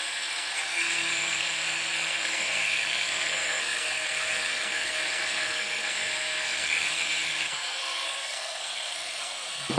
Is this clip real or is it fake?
fake